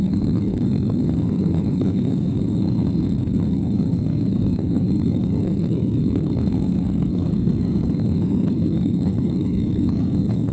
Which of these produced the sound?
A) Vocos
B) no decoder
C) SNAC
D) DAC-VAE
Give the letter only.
C